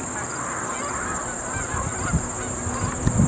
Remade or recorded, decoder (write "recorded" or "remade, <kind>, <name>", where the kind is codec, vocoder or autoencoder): recorded